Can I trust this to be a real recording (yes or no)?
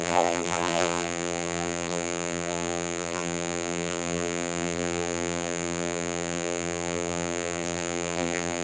no